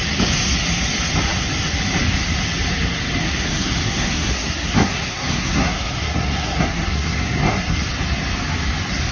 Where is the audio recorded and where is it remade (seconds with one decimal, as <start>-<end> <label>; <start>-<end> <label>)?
0.0-3.2 recorded; 3.2-7.8 remade; 7.8-9.1 recorded